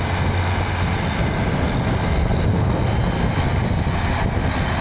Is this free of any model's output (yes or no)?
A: yes